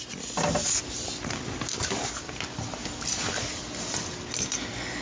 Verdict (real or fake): real